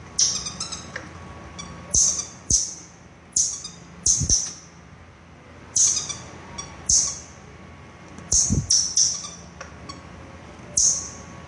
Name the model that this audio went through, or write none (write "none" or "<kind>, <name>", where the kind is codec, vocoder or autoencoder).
none